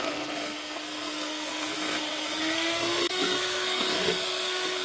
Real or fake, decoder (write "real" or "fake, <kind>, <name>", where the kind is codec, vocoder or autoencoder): fake, codec, SNAC